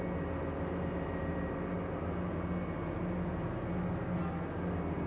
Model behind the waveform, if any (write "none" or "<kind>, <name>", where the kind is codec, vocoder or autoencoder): none